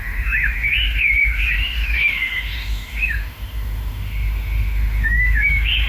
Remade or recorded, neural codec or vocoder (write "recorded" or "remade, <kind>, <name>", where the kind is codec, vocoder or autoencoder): remade, autoencoder, DAC-VAE